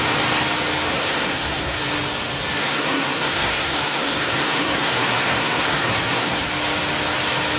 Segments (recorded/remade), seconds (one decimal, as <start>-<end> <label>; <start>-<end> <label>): 0.0-0.9 recorded; 0.9-1.8 remade; 1.8-2.6 recorded; 2.6-6.5 remade; 6.5-7.6 recorded